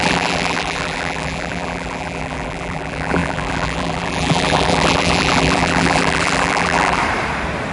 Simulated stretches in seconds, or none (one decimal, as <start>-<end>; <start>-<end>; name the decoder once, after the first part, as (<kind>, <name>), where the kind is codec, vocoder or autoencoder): 0.0-7.0 (vocoder, BigVGAN v2)

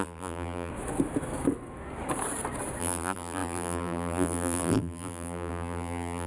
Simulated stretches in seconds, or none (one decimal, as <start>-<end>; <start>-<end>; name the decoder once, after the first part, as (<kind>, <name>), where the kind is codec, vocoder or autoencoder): 0.0-0.7 (vocoder, BigVGAN v2); 2.8-6.3